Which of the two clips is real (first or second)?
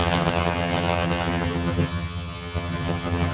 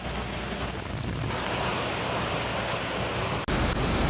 second